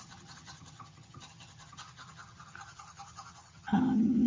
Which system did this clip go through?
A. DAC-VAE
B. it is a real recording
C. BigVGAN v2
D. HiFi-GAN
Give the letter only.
D